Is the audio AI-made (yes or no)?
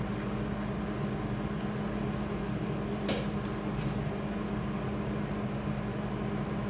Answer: no